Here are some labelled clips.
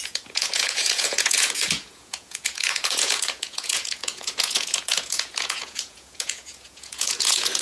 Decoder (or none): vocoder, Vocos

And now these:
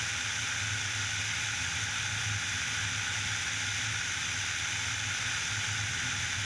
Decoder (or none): none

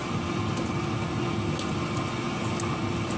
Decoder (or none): none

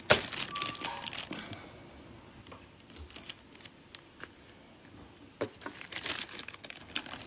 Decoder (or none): none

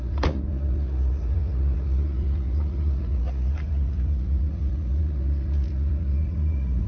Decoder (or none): vocoder, Vocos